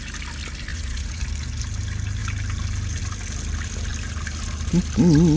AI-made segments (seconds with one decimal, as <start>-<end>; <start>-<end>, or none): 0.7-1.2